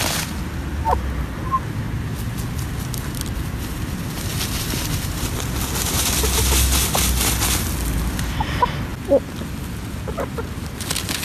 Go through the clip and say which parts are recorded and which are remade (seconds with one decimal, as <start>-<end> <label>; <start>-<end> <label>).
0.0-4.3 recorded; 4.3-6.1 remade; 6.1-11.2 recorded